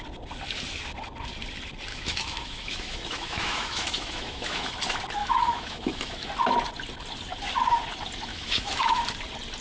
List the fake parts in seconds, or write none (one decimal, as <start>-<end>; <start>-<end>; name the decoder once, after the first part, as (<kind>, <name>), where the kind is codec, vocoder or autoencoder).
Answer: 1.9-4.7 (autoencoder, DAC-VAE); 5.2-6.3; 8.3-9.0